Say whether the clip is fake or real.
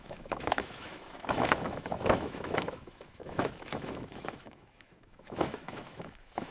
fake